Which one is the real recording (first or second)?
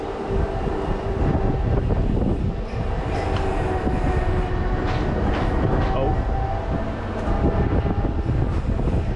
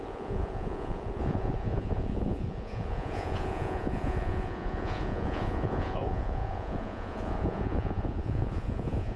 first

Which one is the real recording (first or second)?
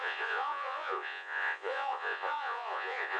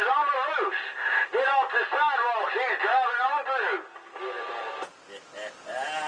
second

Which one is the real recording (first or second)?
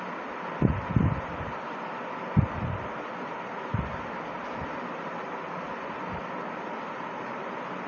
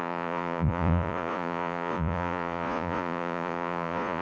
first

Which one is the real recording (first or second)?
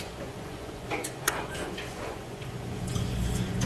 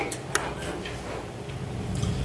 second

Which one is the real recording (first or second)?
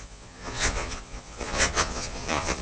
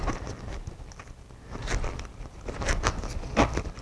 second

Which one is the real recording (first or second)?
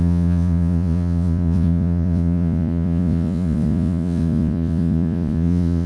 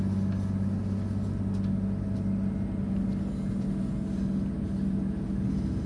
second